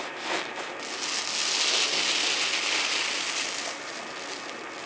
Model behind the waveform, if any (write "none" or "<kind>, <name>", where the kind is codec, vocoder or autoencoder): none